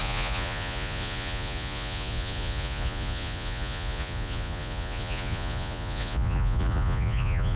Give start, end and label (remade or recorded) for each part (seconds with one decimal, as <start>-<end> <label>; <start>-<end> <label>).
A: 0.0-7.6 remade